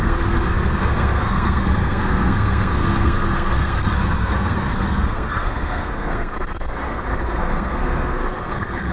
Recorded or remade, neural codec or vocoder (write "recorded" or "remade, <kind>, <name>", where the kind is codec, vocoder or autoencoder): remade, codec, SNAC